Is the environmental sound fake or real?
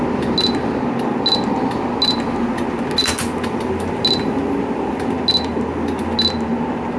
real